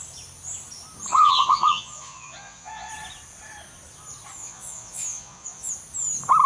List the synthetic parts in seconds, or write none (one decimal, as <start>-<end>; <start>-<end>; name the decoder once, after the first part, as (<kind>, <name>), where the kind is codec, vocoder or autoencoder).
1.1-2.9 (vocoder, Vocos); 4.4-5.7